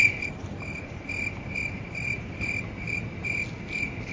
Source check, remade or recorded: recorded